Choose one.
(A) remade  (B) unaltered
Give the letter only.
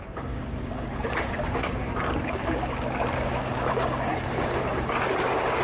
A